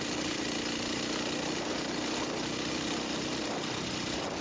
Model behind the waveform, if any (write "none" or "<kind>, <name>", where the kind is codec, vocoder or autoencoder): none